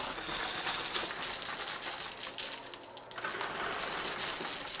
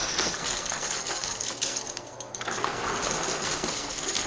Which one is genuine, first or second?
first